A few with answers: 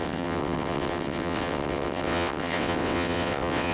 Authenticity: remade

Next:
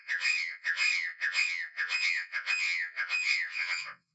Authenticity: remade